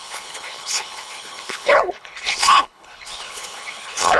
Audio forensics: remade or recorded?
remade